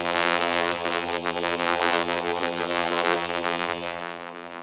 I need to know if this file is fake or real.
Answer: fake